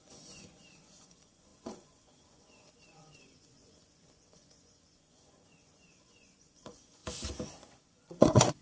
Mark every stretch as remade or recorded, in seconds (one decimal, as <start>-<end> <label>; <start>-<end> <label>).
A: 0.0-7.0 remade; 7.0-7.8 recorded; 7.8-8.6 remade